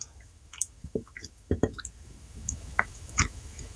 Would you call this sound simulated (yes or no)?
yes